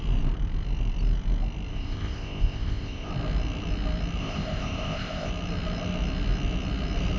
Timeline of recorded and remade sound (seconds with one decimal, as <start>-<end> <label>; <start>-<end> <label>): 0.0-1.7 recorded; 1.7-3.1 remade; 3.1-4.2 recorded; 4.2-5.3 remade; 5.3-7.2 recorded